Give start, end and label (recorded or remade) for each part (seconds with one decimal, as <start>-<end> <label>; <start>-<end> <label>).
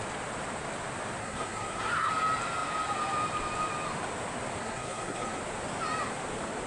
0.0-1.2 recorded; 1.2-2.1 remade; 2.1-4.6 recorded; 4.6-5.4 remade; 5.4-6.7 recorded